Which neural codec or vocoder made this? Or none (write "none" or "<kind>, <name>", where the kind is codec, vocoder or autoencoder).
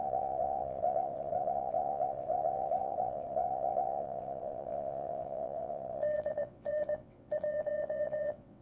vocoder, WaveNeXt